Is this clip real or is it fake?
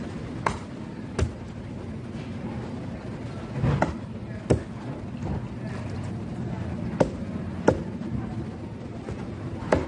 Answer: real